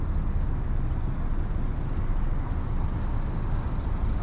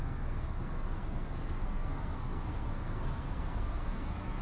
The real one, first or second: first